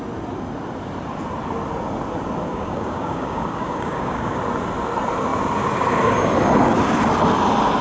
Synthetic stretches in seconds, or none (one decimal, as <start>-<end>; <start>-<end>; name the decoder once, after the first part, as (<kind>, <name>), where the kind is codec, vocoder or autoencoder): 2.5-4.4 (codec, DAC)